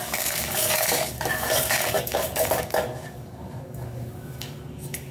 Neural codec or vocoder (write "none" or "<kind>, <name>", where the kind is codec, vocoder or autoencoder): codec, DAC